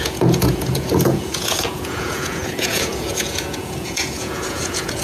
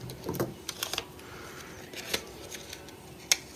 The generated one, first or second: first